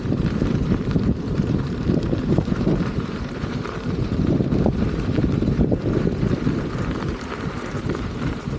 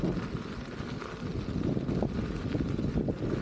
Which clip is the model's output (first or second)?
first